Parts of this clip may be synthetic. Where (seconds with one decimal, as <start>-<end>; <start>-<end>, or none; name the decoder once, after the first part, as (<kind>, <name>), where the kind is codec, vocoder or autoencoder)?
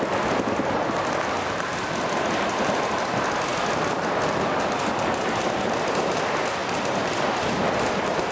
none